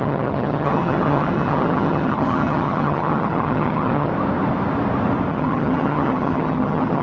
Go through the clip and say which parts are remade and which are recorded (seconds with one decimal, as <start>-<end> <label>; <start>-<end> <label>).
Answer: 0.0-4.1 remade; 4.1-5.3 recorded; 5.3-7.0 remade